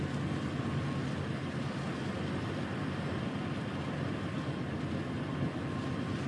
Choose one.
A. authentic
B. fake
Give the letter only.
A